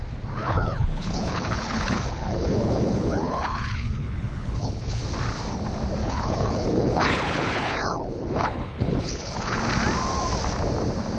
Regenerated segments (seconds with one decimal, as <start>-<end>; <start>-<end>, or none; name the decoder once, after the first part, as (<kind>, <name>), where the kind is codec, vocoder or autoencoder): 0.4-5.0 (codec, HILCodec); 6.0-9.6